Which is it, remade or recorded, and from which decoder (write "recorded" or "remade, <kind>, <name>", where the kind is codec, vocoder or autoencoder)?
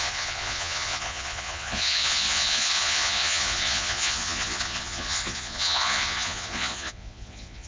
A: remade, vocoder, Vocos